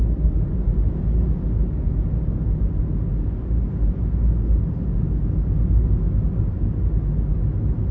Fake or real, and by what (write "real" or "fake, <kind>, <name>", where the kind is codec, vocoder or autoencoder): real